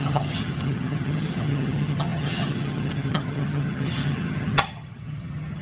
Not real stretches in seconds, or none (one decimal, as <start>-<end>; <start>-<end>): 0.0-5.6